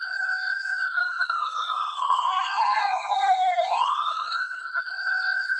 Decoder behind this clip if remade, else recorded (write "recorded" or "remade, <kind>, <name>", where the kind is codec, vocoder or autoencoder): remade, codec, SNAC